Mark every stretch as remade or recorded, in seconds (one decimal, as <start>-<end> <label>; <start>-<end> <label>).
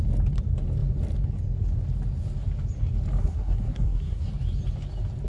0.0-3.2 recorded; 3.2-4.3 remade; 4.3-5.3 recorded